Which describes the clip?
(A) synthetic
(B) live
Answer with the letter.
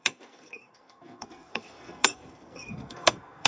A